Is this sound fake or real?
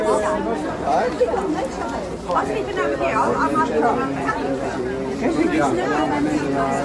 real